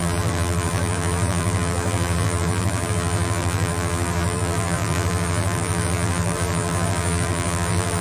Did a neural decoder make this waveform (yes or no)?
yes